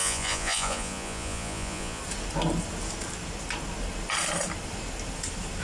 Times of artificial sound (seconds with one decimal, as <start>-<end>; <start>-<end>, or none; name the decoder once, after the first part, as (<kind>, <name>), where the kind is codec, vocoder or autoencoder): 0.0-2.0 (vocoder, Vocos)